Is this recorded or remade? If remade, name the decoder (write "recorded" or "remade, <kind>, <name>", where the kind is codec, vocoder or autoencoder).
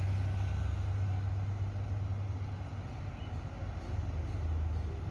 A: recorded